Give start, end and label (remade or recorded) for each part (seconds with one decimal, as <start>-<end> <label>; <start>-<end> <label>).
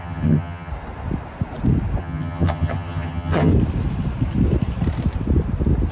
0.0-0.7 remade; 0.7-2.0 recorded; 2.0-3.5 remade; 3.5-5.9 recorded